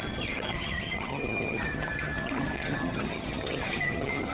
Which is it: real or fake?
fake